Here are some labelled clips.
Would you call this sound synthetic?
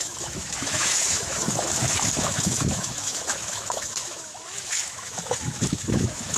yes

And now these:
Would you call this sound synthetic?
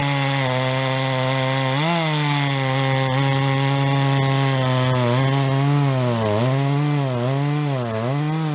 no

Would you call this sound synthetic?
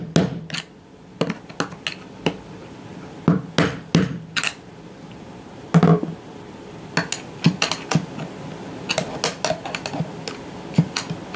no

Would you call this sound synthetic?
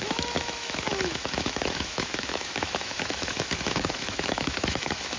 yes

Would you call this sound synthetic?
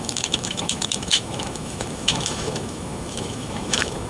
yes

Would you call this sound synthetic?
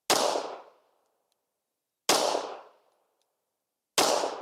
no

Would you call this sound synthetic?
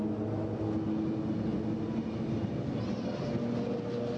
no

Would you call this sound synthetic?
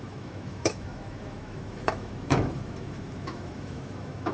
yes